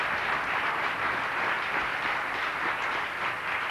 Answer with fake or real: real